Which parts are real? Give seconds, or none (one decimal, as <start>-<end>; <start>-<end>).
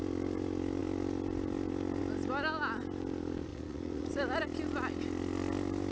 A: 0.0-3.5; 4.1-5.9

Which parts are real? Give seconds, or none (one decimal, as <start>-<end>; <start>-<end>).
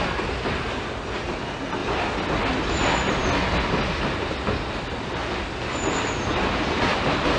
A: 0.0-7.4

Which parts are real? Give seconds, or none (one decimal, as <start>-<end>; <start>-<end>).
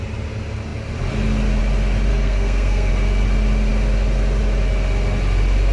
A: 0.0-2.1; 2.9-5.7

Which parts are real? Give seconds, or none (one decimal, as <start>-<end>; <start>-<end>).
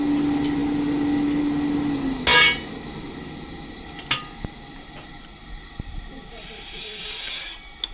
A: 0.0-6.8; 7.4-7.9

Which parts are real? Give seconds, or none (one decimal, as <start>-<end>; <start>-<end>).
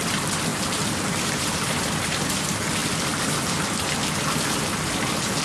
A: 0.0-5.4